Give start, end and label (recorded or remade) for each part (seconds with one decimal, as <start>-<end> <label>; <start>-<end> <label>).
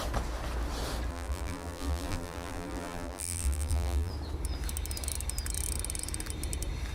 0.0-1.1 recorded; 1.1-4.1 remade; 4.1-6.9 recorded